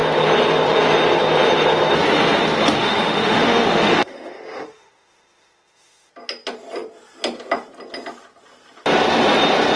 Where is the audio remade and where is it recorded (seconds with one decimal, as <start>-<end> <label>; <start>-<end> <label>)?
0.0-2.8 recorded; 2.8-6.1 remade; 6.1-9.8 recorded

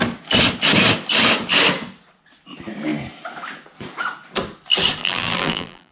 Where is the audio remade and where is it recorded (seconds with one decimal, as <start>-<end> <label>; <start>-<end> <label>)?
0.0-5.0 recorded; 5.0-5.9 remade

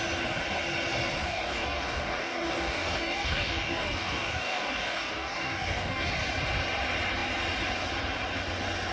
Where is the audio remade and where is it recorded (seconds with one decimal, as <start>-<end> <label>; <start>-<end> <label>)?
0.0-1.2 recorded; 1.2-6.1 remade; 6.1-8.9 recorded

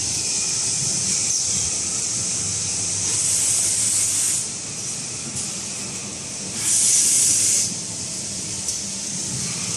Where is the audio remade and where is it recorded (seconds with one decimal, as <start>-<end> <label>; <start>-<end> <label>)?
0.0-1.2 recorded; 1.2-5.3 remade; 5.3-9.8 recorded

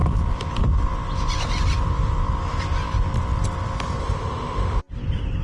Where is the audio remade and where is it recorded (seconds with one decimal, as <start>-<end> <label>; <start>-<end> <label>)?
0.0-4.0 recorded; 4.0-4.8 remade; 4.8-5.4 recorded

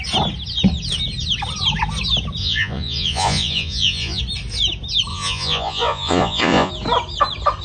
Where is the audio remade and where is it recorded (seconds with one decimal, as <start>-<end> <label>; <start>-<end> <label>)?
0.0-2.4 recorded; 2.4-4.2 remade; 4.2-5.1 recorded; 5.1-6.7 remade; 6.7-7.6 recorded

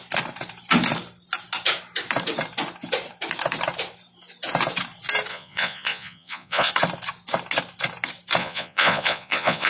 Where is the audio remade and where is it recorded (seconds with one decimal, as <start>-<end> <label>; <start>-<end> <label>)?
0.0-5.3 recorded; 5.3-6.7 remade; 6.7-8.4 recorded; 8.4-9.7 remade

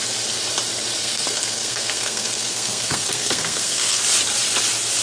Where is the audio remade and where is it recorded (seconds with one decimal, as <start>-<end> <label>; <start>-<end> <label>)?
0.0-1.0 recorded; 1.0-4.0 remade; 4.0-5.0 recorded